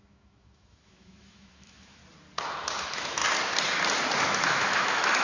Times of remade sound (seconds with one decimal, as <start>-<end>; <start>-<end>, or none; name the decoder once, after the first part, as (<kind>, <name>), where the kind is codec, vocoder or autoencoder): 0.0-2.0 (autoencoder, DAC-VAE); 2.8-3.2; 4.2-5.2